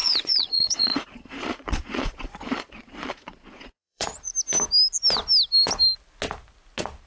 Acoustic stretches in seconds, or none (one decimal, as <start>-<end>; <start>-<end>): 4.3-7.1